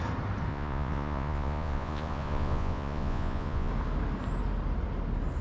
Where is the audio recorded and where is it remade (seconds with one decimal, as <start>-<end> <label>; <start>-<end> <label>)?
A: 0.0-0.5 recorded; 0.5-3.7 remade; 3.7-5.4 recorded